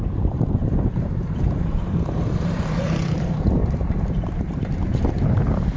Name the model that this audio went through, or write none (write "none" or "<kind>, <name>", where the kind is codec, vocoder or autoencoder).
vocoder, BigVGAN v2